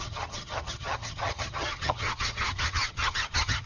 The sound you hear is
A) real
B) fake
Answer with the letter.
B